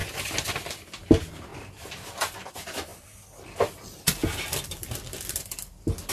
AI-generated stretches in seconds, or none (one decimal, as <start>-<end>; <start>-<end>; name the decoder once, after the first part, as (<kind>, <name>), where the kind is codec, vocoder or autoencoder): 0.7-1.5 (vocoder, BigVGAN v2); 2.5-2.9; 3.8-4.2; 4.8-6.1